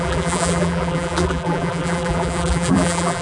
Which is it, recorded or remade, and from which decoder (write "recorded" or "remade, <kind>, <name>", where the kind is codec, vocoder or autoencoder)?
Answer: remade, vocoder, BigVGAN v2